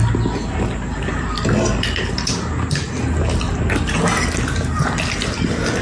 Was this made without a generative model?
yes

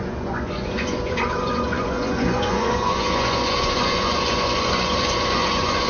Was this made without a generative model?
no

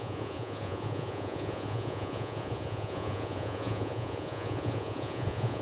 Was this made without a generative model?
no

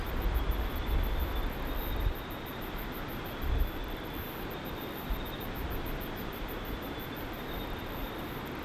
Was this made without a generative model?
yes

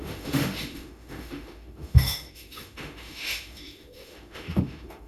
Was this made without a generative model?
no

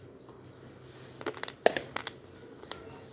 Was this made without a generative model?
yes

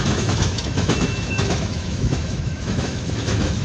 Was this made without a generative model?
no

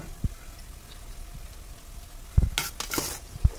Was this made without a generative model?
yes